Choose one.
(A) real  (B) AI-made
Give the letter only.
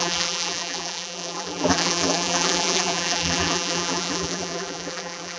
B